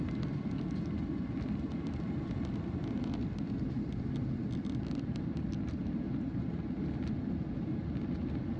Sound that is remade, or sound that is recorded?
recorded